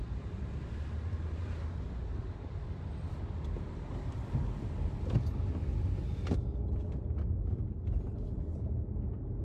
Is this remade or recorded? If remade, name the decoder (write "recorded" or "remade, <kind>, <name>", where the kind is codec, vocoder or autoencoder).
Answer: recorded